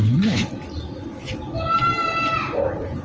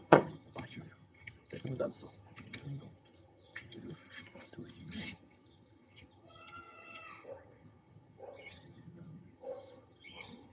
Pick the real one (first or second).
first